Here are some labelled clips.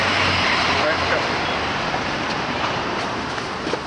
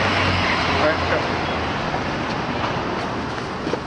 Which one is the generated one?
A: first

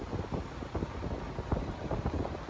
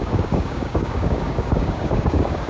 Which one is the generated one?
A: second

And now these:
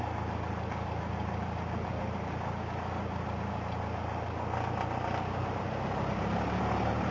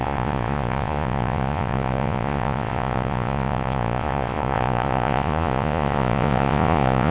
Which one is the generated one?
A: second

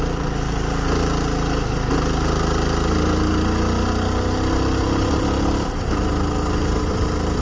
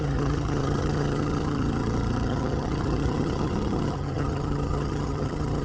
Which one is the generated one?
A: second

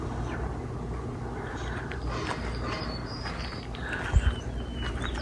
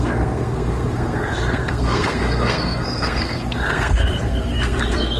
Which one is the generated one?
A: second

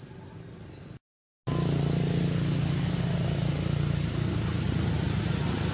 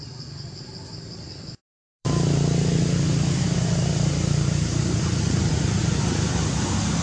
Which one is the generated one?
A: second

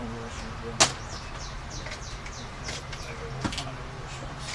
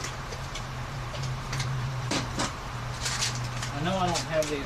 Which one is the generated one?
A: second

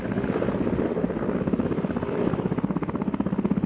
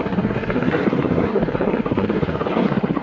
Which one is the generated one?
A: second